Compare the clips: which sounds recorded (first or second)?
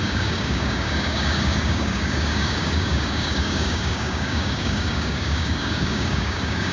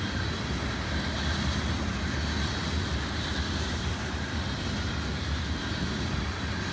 second